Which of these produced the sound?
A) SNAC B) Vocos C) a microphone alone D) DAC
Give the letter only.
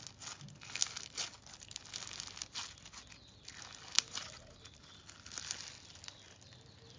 C